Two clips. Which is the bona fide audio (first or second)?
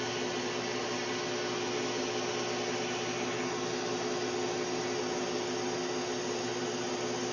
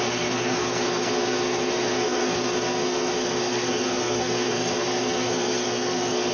first